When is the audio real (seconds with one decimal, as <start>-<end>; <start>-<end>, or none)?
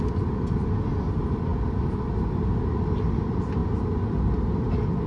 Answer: 0.0-5.1